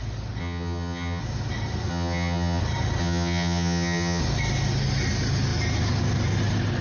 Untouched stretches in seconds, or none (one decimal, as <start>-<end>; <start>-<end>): 0.0-0.4; 1.2-1.9; 2.6-3.0; 4.2-6.8